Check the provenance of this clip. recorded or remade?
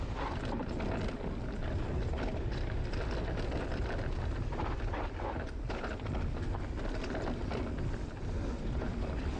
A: recorded